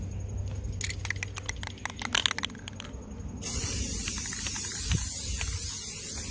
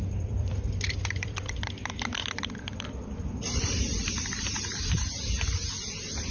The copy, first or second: second